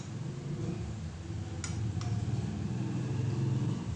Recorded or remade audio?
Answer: recorded